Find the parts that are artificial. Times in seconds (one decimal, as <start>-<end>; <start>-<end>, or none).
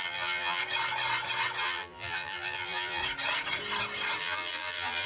0.0-0.6; 1.6-3.0; 4.2-5.1